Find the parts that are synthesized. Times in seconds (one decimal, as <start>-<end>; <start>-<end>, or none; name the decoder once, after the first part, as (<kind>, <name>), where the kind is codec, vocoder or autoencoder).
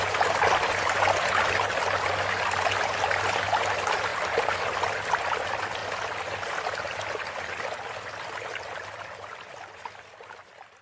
none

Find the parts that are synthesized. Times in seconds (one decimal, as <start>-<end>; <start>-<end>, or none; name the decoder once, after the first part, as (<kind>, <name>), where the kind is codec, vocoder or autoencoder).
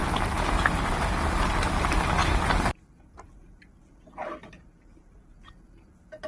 0.0-0.9 (vocoder, BigVGAN v2); 2.2-6.3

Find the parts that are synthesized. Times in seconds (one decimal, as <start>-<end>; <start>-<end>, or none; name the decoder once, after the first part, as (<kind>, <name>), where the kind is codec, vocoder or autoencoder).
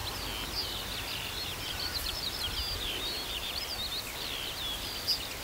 1.6-2.1 (vocoder, BigVGAN v2)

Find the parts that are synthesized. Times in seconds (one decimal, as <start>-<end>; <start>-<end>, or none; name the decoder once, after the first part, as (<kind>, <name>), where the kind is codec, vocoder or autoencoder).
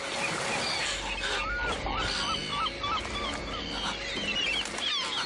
none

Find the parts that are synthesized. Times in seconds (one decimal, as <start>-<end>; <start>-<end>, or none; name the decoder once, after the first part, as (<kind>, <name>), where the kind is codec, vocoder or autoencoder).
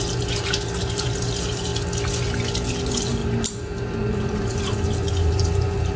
0.0-1.7 (vocoder, BigVGAN v2); 2.7-6.0